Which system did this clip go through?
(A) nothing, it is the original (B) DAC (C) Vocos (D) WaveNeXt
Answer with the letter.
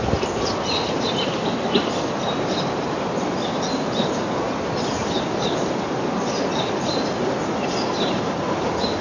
A